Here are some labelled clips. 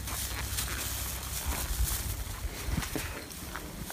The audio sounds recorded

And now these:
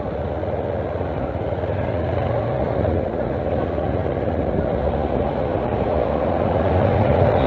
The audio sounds remade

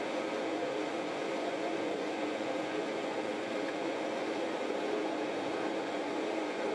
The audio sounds remade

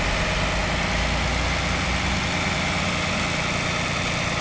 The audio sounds recorded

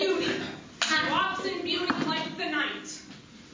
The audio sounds recorded